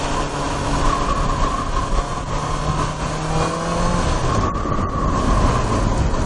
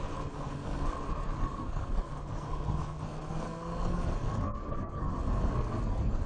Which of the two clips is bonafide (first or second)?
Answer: first